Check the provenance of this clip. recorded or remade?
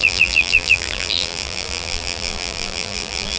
remade